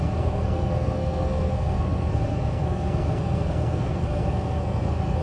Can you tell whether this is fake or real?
fake